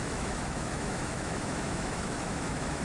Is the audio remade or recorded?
remade